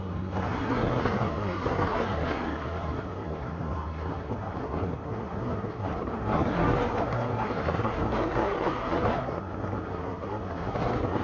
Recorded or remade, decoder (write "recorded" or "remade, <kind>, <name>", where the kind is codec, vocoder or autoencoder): remade, codec, SNAC